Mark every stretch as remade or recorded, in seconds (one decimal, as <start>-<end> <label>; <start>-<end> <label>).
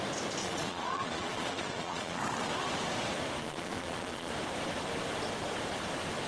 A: 0.0-0.4 recorded; 0.4-2.2 remade; 2.2-3.4 recorded; 3.4-4.3 remade; 4.3-6.3 recorded